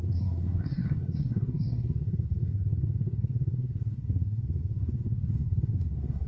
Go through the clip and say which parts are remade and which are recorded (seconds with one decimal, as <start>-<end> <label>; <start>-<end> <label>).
0.0-6.3 remade